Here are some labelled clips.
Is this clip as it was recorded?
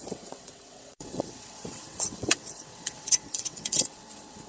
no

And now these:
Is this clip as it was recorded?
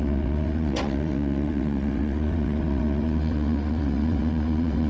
no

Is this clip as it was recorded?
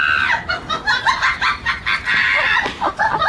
yes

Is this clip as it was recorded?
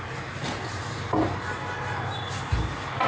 yes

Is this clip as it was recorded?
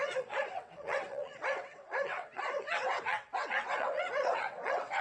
no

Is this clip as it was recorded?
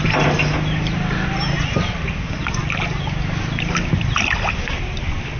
yes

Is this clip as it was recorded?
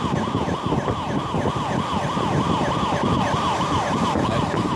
yes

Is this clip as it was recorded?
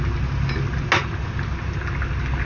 yes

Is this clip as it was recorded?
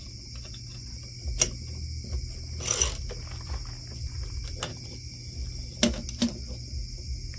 yes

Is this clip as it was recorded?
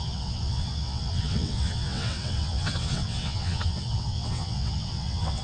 no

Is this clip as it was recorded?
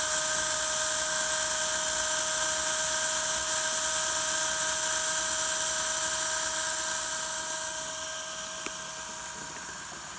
yes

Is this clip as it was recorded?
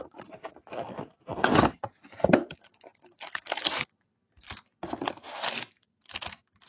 yes